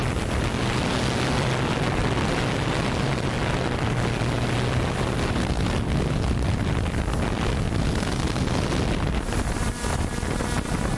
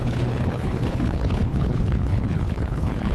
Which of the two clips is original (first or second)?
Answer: first